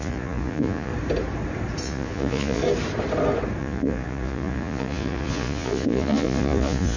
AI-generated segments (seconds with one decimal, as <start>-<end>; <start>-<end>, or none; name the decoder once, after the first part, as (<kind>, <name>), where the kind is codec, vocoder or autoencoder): 0.0-0.9 (vocoder, Vocos); 1.8-2.6; 3.6-7.0